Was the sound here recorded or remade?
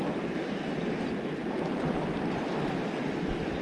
recorded